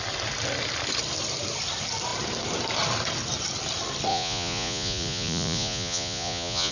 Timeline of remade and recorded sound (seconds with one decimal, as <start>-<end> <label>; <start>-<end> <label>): 0.0-4.1 recorded; 4.1-6.7 remade